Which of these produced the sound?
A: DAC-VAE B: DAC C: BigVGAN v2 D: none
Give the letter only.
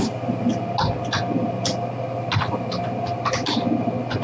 D